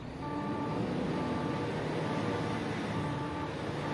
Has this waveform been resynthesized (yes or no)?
no